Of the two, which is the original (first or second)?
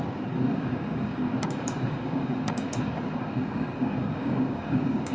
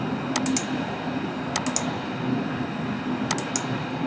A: second